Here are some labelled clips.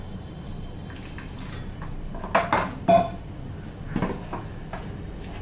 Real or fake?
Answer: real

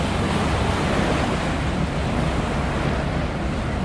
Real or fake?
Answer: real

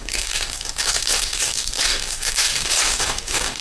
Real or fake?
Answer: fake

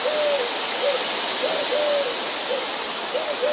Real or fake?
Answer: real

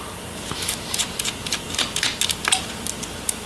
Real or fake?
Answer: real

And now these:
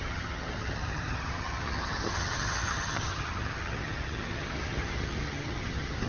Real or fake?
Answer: fake